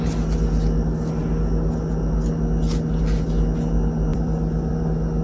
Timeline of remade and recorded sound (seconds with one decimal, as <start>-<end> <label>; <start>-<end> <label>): 0.0-4.1 recorded; 4.1-4.8 remade; 4.8-5.2 recorded